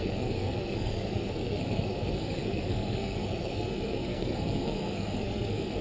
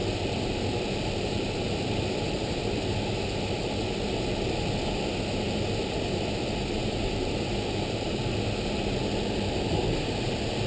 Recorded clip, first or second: second